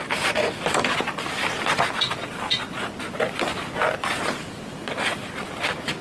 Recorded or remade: recorded